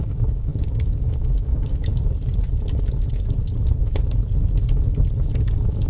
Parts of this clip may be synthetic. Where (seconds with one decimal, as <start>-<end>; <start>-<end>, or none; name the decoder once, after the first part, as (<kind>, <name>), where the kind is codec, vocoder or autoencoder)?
0.0-1.9 (codec, DAC); 5.4-5.9